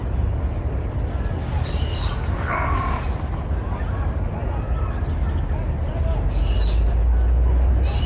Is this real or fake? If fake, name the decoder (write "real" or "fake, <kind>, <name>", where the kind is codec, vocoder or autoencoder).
real